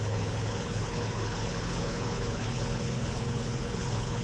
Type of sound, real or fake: fake